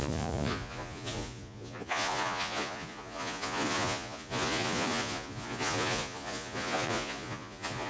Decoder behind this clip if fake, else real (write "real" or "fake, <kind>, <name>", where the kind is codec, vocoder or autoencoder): fake, vocoder, Vocos